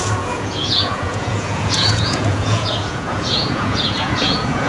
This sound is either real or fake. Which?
fake